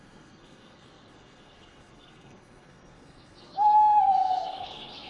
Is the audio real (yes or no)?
no